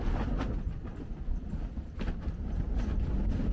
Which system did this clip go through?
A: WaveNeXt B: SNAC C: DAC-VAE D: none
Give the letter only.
D